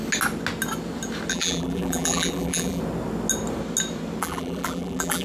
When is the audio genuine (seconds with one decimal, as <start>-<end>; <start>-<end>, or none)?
0.0-1.3; 2.8-4.2